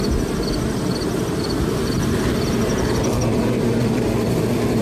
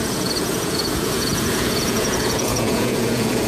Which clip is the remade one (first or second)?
second